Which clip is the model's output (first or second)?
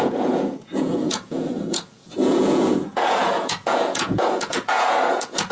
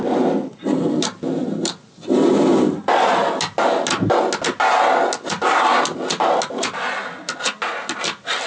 first